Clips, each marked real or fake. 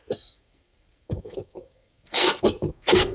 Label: fake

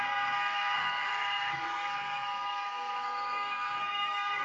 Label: fake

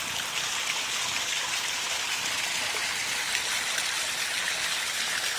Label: real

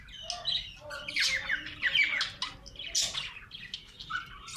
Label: real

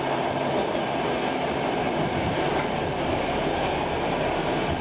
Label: real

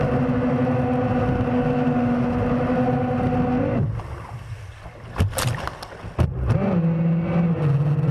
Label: real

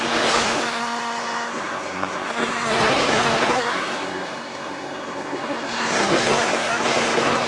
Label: fake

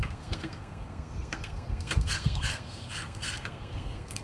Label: fake